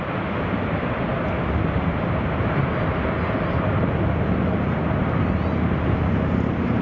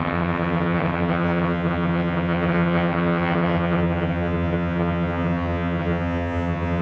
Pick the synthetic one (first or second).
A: second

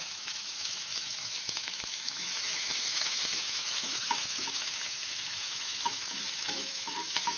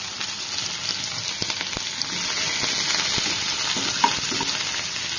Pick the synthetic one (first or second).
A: first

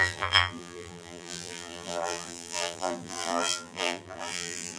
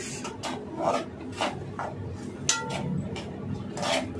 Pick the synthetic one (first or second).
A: first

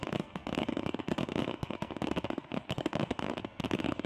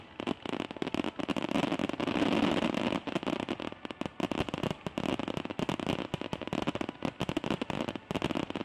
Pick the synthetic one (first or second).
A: first